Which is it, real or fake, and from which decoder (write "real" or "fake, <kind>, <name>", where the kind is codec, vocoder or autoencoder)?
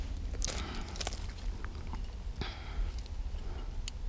real